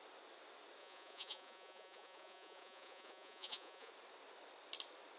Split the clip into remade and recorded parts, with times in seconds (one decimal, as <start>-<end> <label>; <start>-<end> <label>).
0.0-0.8 recorded; 0.8-3.9 remade; 3.9-5.2 recorded

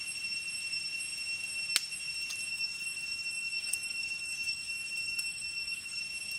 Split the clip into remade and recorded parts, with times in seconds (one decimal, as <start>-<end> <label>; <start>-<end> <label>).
0.0-2.5 recorded; 2.5-6.0 remade; 6.0-6.4 recorded

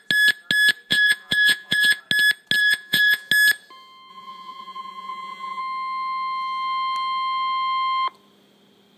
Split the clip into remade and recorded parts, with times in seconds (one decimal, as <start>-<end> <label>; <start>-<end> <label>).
0.0-0.9 recorded; 0.9-2.0 remade; 2.0-2.6 recorded; 2.6-3.3 remade; 3.3-4.1 recorded; 4.1-5.6 remade; 5.6-9.0 recorded

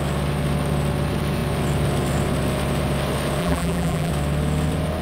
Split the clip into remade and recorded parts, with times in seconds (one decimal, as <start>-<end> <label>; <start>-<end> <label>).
0.0-3.4 recorded; 3.4-4.1 remade; 4.1-5.0 recorded

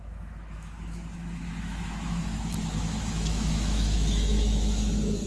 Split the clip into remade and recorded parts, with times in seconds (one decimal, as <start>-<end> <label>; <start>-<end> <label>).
0.0-5.3 remade

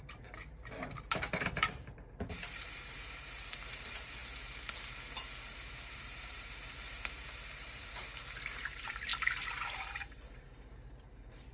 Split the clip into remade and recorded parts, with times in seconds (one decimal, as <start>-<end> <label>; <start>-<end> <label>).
0.0-4.2 remade; 4.2-6.0 recorded; 6.0-9.1 remade; 9.1-9.7 recorded; 9.7-11.5 remade

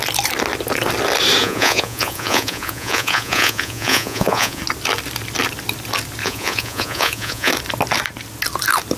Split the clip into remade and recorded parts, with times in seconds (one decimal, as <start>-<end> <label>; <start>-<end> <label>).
0.0-1.4 recorded; 1.4-4.6 remade; 4.6-6.2 recorded; 6.2-7.5 remade; 7.5-9.0 recorded